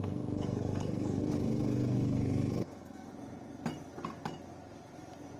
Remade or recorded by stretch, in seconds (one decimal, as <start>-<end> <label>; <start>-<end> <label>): 0.0-3.1 remade; 3.1-5.4 recorded